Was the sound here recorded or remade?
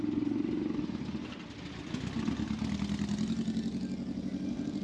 recorded